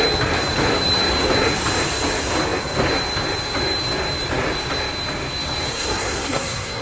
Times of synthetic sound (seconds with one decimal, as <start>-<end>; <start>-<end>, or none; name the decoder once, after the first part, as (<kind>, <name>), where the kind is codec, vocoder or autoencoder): 5.7-6.8 (codec, SNAC)